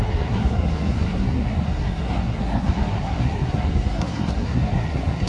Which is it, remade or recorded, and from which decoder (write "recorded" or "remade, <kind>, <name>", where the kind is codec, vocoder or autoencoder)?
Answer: remade, codec, SNAC